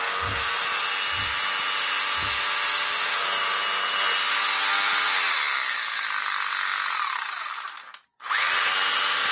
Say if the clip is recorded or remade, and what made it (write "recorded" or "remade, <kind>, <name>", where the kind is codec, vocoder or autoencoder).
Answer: recorded